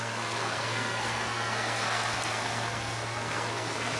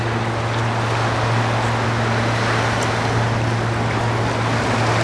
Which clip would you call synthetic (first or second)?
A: first